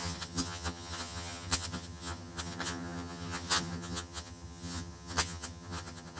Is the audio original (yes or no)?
no